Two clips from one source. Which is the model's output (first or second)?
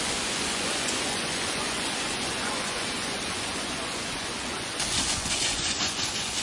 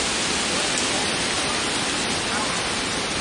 first